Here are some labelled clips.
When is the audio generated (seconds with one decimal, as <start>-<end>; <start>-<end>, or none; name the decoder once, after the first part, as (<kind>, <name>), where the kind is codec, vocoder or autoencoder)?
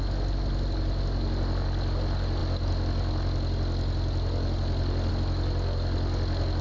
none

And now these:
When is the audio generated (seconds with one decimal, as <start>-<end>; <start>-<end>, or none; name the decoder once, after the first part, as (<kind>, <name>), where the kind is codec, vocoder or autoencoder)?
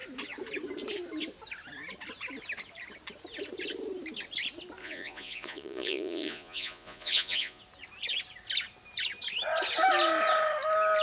4.8-7.6 (vocoder, Vocos)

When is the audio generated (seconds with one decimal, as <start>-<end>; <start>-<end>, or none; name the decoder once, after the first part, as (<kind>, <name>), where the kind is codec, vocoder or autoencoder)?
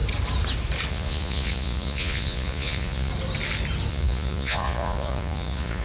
0.9-3.1 (vocoder, Vocos); 3.9-5.8